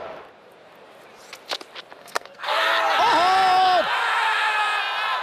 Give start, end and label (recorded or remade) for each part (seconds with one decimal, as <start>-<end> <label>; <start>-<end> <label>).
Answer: 0.0-2.0 recorded; 2.0-2.5 remade; 2.5-5.2 recorded